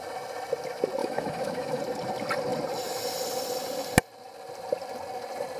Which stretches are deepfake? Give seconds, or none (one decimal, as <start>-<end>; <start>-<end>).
1.0-1.8